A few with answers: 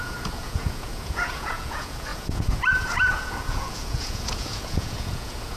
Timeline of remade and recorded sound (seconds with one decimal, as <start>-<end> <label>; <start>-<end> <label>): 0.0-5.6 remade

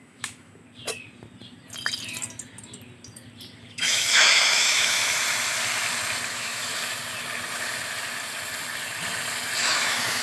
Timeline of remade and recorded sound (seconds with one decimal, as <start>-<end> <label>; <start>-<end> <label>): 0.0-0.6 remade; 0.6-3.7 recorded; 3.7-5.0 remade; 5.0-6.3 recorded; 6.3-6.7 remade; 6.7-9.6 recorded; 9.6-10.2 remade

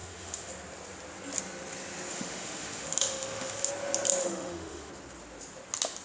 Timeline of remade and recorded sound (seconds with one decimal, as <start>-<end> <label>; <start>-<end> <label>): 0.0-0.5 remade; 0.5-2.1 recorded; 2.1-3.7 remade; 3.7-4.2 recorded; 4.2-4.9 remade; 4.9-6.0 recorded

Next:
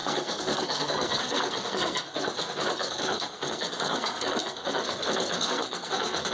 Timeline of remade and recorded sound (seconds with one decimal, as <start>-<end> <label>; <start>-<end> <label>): 0.0-6.3 remade

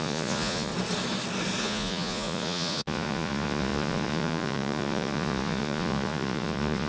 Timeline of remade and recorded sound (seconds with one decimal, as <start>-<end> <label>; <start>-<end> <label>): 0.0-0.7 remade; 0.7-1.6 recorded; 1.6-6.9 remade

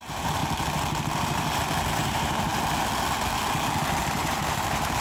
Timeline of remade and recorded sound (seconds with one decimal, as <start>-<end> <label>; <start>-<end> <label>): 0.0-0.4 remade; 0.4-1.9 recorded; 1.9-2.5 remade; 2.5-4.0 recorded; 4.0-5.0 remade

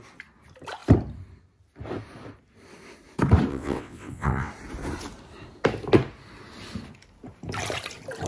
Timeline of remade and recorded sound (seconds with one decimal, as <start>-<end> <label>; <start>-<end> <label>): 0.0-3.5 recorded; 3.5-4.5 remade; 4.5-8.3 recorded

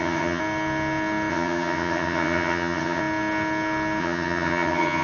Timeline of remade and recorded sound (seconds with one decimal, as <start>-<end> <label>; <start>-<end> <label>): 0.0-0.4 remade; 0.4-1.3 recorded; 1.3-3.0 remade; 3.0-4.0 recorded; 4.0-5.0 remade